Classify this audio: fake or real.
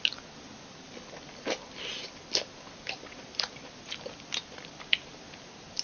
real